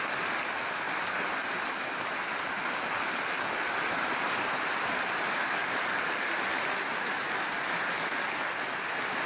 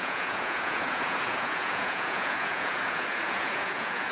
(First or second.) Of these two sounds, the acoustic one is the first